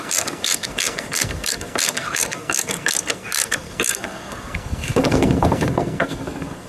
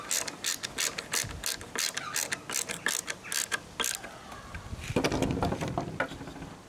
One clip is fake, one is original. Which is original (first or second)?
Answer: second